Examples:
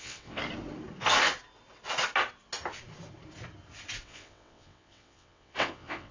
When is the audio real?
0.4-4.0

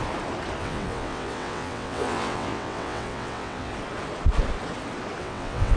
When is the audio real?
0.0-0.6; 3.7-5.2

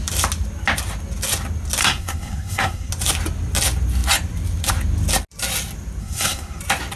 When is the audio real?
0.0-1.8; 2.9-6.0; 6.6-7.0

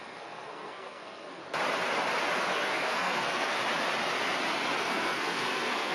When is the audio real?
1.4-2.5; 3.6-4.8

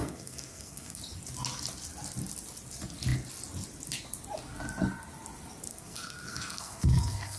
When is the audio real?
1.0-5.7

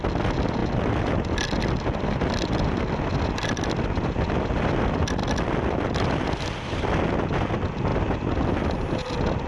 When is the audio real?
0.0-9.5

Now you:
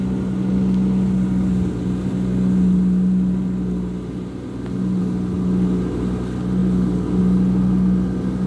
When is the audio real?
0.0-8.5

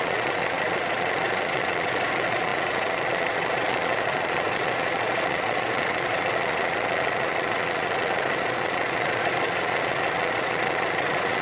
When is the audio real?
none